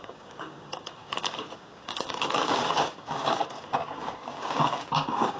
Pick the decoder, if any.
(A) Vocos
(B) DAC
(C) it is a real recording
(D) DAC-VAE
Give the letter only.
B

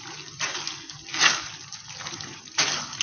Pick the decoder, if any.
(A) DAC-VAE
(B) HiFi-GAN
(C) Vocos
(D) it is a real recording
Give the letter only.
D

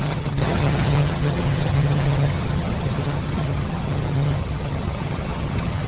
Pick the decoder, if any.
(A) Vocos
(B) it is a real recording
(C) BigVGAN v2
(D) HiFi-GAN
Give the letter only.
D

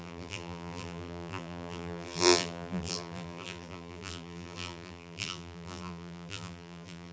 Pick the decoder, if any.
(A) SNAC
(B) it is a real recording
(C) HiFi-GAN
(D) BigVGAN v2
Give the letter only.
D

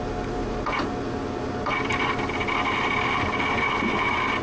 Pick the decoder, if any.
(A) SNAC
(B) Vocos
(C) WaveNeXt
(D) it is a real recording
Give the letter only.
D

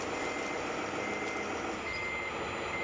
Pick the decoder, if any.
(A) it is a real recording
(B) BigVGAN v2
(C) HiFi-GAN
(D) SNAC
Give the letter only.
A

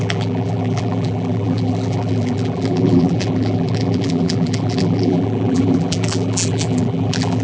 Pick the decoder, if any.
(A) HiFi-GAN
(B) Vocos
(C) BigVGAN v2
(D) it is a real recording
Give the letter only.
C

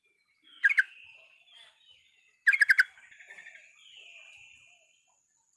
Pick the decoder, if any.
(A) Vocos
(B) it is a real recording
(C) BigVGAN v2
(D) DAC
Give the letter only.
B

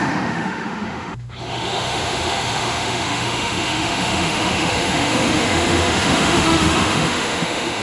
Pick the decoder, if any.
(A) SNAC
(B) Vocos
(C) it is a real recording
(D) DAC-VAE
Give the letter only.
D